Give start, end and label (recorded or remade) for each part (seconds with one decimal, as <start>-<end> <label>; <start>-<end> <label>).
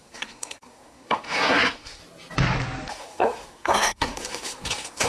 0.0-2.0 remade; 2.0-2.9 recorded; 2.9-5.1 remade